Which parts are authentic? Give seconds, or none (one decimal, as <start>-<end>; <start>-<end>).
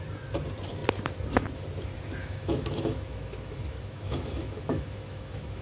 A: 0.0-2.2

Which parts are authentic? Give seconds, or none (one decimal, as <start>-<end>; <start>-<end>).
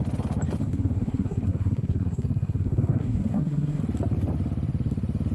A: 0.0-0.6; 3.8-5.3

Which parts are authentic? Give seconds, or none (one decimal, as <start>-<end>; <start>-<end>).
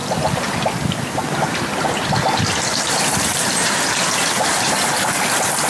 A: 0.0-5.7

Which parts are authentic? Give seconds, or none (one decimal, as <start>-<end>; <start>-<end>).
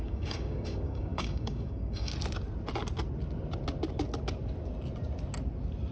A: 2.1-5.9